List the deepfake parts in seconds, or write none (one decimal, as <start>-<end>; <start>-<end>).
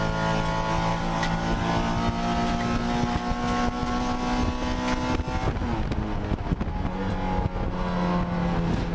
0.9-1.7